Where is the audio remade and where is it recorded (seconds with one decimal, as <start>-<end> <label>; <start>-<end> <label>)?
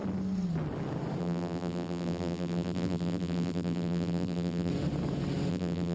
0.0-1.2 recorded; 1.2-4.7 remade; 4.7-5.5 recorded; 5.5-5.9 remade